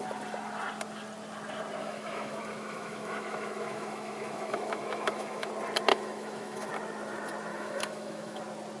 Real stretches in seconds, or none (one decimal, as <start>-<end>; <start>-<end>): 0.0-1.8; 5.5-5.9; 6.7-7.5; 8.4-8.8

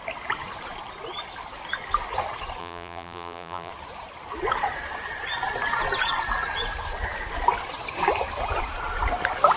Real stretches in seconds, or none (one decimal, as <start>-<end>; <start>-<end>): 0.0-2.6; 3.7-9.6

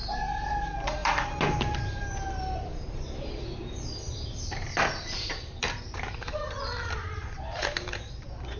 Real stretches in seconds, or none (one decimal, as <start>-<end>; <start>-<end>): 0.0-1.0; 5.8-8.6

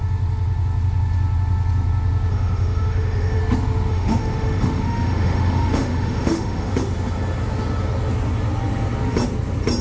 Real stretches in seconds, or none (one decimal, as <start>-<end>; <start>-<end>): 0.0-2.3; 3.4-3.9; 6.7-9.8

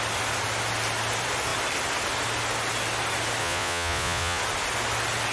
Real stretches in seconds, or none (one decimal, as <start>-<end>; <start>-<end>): 0.0-3.4; 4.4-5.3

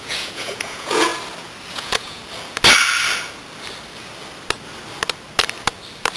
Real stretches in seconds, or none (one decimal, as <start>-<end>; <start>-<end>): 1.1-1.7; 2.2-6.2